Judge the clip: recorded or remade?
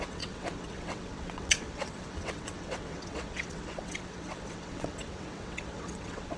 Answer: remade